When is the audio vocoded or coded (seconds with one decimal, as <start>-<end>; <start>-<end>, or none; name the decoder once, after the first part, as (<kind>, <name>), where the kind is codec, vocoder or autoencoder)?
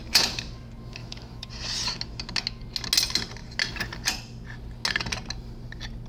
1.0-1.5 (autoencoder, DAC-VAE)